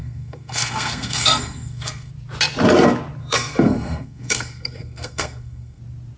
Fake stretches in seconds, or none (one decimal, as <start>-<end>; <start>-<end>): 0.0-2.1; 3.2-5.8